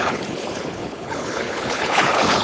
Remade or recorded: remade